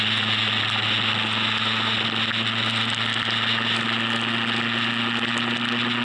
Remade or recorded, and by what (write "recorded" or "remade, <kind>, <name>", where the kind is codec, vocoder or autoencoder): recorded